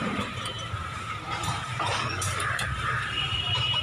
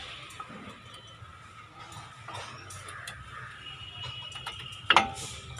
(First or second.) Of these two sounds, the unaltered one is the second